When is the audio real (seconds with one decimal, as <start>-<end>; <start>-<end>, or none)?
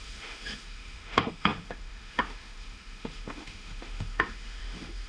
none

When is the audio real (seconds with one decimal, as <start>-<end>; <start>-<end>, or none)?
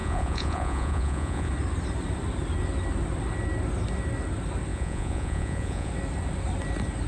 1.5-4.7; 5.9-7.1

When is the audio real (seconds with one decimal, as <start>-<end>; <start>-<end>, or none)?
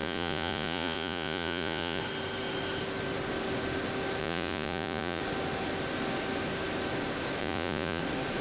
2.0-4.2; 5.2-7.4; 8.0-8.4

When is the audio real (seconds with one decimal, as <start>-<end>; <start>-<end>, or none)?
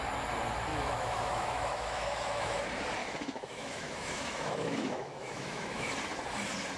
0.0-0.7; 2.6-3.0; 5.9-6.8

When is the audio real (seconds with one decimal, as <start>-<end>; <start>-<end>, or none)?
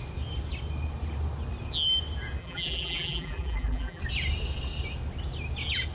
0.0-2.4; 4.0-5.9